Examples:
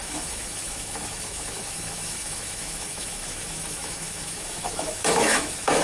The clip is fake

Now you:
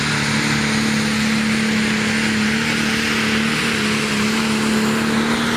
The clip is real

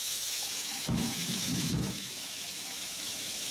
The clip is fake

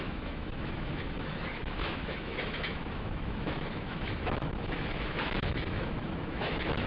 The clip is fake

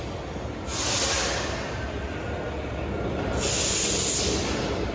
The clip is real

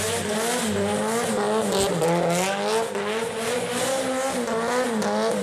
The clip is real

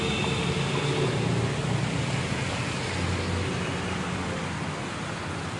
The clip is real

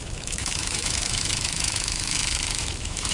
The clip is fake